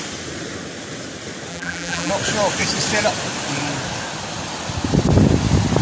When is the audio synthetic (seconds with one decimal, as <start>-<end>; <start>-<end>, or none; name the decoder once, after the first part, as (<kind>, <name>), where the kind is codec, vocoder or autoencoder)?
1.5-2.1 (vocoder, BigVGAN v2)